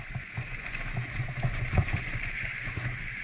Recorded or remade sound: remade